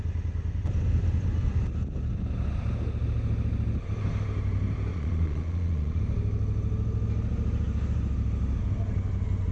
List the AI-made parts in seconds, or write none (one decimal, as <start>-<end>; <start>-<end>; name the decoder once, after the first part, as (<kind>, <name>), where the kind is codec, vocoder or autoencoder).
4.9-6.0 (vocoder, Vocos)